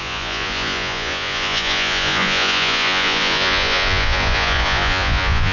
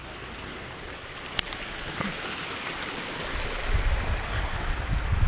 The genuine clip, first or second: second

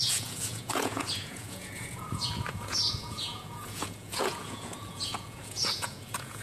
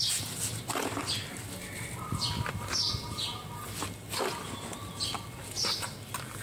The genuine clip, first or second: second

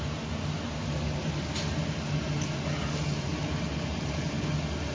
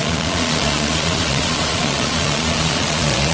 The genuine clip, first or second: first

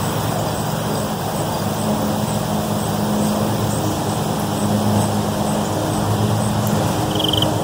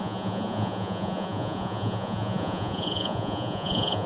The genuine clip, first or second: first